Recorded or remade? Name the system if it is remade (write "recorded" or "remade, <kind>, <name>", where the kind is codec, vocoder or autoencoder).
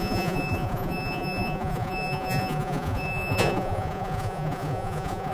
remade, vocoder, Vocos